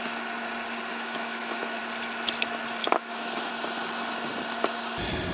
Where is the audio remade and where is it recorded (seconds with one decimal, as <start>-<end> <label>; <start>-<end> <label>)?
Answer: 0.0-0.9 recorded; 0.9-1.8 remade; 1.8-2.8 recorded; 2.8-3.5 remade; 3.5-5.3 recorded